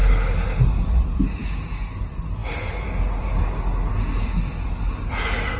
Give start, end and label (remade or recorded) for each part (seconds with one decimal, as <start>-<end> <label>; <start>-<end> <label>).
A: 0.0-5.6 recorded